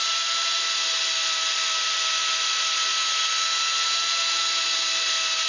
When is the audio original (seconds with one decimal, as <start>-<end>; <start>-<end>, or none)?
0.0-5.5